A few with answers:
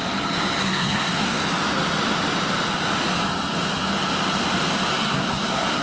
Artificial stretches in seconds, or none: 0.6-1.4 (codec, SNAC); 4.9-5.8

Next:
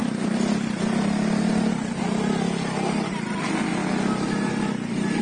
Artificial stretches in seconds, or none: none

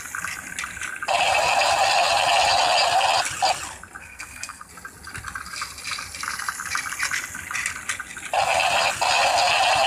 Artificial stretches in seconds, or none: 4.0-4.7 (codec, SNAC)

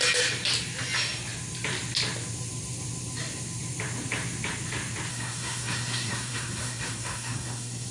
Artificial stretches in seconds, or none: 5.1-7.9 (codec, SNAC)